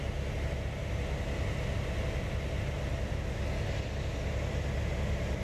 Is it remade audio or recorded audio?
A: recorded